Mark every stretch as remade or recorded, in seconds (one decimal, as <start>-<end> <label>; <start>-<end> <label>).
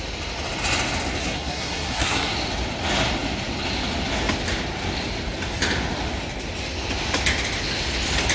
0.0-1.2 recorded; 1.2-2.3 remade; 2.3-8.3 recorded